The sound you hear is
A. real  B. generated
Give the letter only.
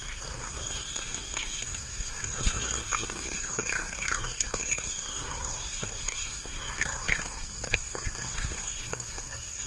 B